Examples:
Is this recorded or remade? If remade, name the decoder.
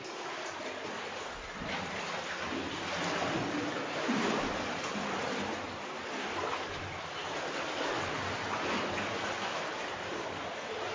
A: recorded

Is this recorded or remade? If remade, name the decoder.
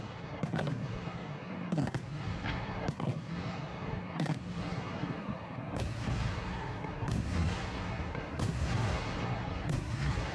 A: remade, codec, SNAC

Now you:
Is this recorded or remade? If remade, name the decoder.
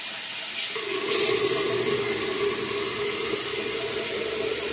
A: recorded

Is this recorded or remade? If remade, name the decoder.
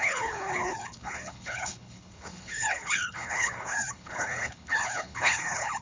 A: remade, codec, HILCodec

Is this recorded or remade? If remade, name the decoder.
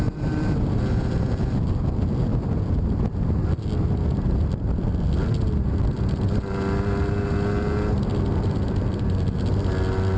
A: recorded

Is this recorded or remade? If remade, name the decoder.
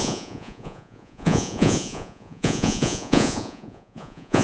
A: remade, vocoder, Vocos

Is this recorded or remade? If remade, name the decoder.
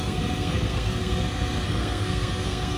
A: remade, codec, SNAC